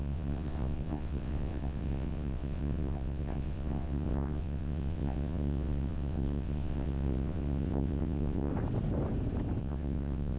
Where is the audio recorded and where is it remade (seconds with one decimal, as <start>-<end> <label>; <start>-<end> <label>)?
0.0-8.5 remade; 8.5-9.6 recorded; 9.6-10.4 remade